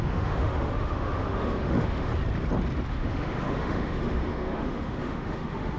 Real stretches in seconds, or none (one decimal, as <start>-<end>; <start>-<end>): 2.1-2.9